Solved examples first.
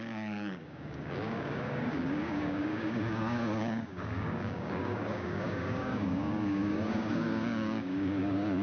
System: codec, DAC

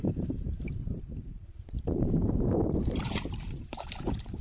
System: vocoder, BigVGAN v2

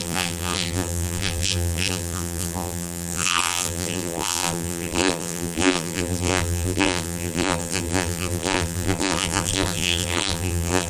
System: vocoder, BigVGAN v2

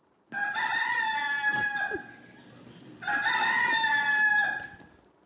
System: none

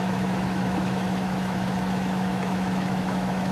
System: autoencoder, DAC-VAE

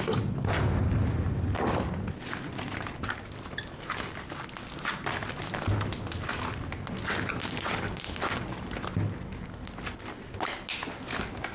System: none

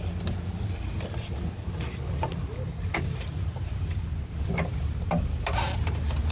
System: none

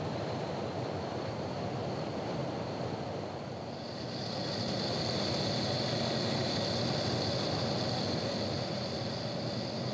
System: none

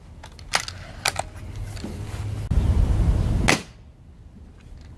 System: none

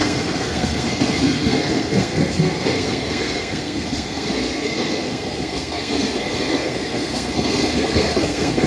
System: codec, SNAC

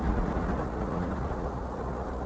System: vocoder, Vocos